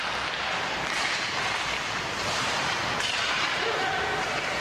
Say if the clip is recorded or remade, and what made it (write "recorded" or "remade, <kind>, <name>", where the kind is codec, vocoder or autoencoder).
remade, vocoder, BigVGAN v2